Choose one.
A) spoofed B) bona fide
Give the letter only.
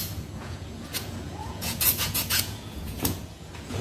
A